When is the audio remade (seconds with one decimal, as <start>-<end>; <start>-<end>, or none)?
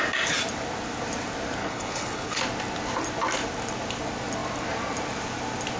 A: 1.6-2.4